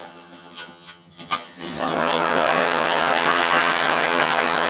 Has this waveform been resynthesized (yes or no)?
yes